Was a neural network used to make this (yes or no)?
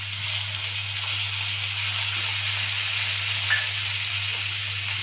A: no